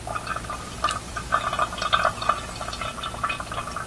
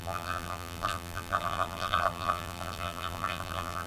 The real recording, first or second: first